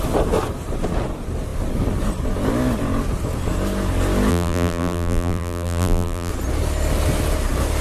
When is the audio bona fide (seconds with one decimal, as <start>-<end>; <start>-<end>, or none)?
0.0-4.3; 6.3-7.8